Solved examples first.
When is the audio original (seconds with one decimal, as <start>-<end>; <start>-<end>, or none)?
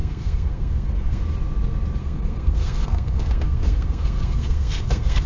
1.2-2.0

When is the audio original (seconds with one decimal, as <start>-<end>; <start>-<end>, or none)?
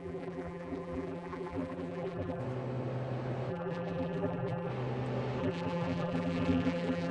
2.4-3.5; 4.7-5.4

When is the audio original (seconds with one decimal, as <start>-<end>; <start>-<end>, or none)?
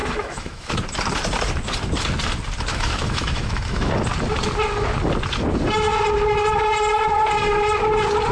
0.7-2.7; 3.9-8.3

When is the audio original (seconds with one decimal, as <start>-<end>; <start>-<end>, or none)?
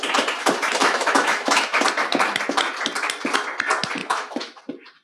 0.0-0.8; 1.6-4.0; 4.6-5.0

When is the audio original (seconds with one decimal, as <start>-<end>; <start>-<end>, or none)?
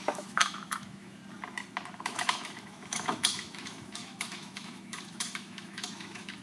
1.2-1.9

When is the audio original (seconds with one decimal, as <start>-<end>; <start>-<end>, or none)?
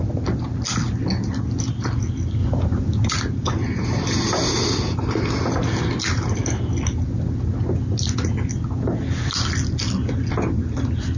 0.0-2.4; 3.1-11.2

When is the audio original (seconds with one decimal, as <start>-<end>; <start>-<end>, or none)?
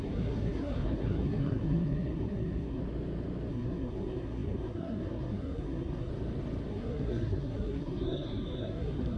2.8-3.5; 6.1-6.7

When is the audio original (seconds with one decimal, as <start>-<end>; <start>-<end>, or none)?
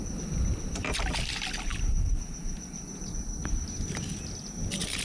0.0-5.0